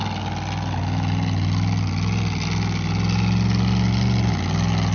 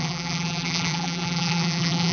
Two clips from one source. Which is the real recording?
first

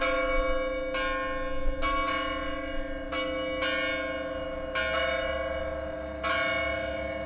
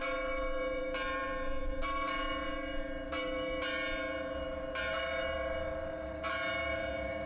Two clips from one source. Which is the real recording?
first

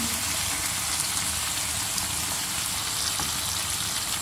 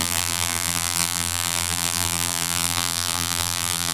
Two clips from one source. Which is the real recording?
first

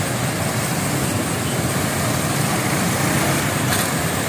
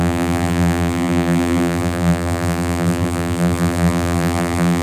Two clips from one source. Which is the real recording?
first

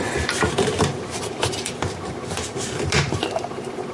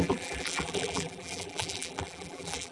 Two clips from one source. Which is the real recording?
first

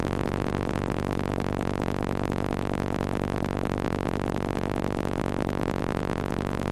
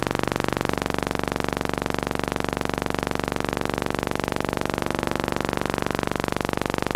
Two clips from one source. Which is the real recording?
second